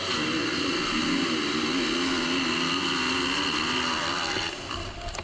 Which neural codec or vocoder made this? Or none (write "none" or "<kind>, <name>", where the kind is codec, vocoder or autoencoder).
none